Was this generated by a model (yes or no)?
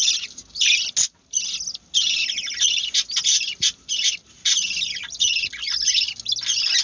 no